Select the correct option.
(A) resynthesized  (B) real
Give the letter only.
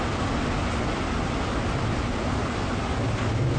B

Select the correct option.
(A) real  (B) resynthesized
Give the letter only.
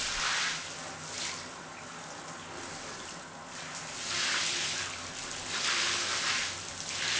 A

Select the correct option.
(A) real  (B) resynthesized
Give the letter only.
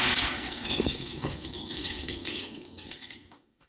B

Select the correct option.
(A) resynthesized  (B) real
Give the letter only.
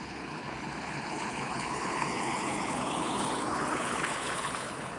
A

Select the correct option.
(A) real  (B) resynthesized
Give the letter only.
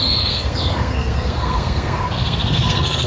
B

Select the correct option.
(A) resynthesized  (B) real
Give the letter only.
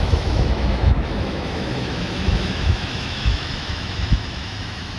A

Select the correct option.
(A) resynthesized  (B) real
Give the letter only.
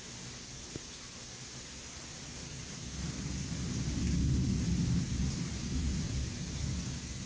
B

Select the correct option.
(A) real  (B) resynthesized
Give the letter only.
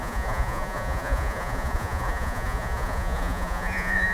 B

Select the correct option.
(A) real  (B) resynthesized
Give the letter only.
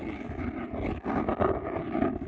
A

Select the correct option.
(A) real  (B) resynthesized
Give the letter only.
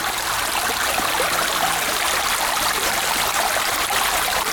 A